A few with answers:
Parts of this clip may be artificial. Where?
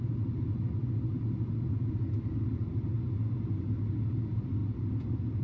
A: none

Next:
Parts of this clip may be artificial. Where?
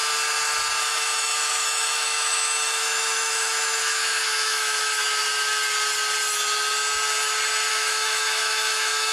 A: 0.8-5.2 (autoencoder, DAC-VAE); 7.7-9.1